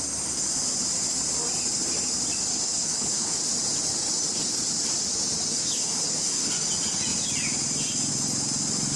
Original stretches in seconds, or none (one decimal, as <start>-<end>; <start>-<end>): 0.0-2.5; 3.4-5.5; 6.5-9.0

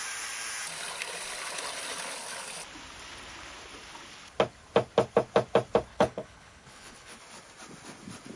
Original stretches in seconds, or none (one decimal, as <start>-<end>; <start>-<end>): 0.0-5.9; 7.2-8.4

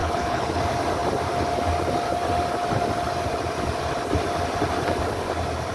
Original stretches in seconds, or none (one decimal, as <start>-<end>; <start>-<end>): 0.6-5.7

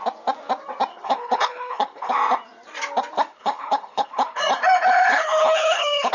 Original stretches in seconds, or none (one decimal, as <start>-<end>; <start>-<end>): 0.0-0.9; 2.1-3.3; 4.4-5.1